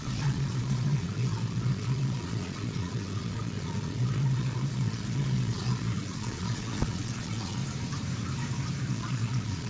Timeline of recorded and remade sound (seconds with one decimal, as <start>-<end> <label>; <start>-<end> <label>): 0.0-7.6 remade; 7.6-8.9 recorded; 8.9-9.7 remade